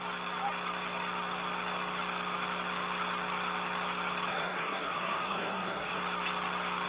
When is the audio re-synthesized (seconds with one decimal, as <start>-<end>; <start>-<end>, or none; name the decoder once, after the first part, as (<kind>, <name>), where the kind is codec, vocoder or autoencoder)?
4.3-6.0 (codec, SNAC)